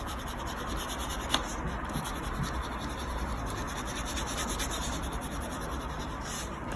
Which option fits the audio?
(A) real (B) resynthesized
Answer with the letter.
A